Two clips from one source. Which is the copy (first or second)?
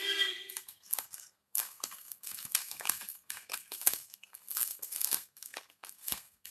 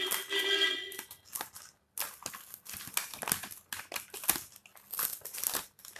first